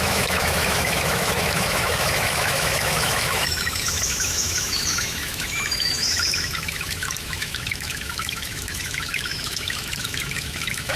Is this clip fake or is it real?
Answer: fake